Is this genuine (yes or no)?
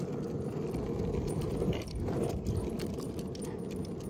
no